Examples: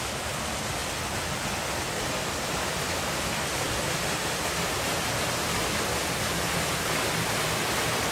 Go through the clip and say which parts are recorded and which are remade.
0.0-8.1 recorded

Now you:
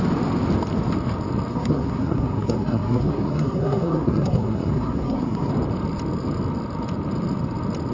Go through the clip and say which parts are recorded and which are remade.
0.0-1.5 recorded; 1.5-5.5 remade; 5.5-7.9 recorded

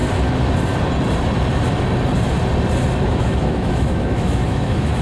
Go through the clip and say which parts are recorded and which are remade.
0.0-3.0 recorded; 3.0-5.0 remade

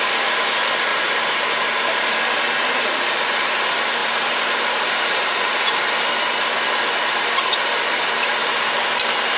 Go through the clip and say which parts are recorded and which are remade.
0.0-0.9 recorded; 0.9-1.8 remade; 1.8-4.0 recorded; 4.0-5.8 remade; 5.8-8.4 recorded; 8.4-9.4 remade

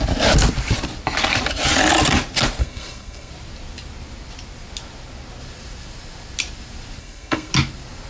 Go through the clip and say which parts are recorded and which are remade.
0.0-2.6 recorded; 2.6-3.3 remade; 3.3-7.0 recorded; 7.0-7.5 remade; 7.5-8.1 recorded

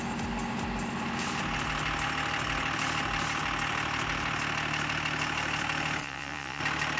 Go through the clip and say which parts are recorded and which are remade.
0.0-6.0 recorded; 6.0-6.6 remade; 6.6-7.0 recorded

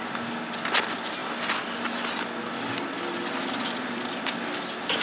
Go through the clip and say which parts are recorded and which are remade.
0.0-5.0 recorded